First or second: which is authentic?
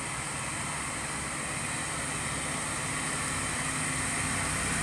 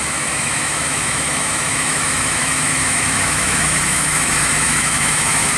first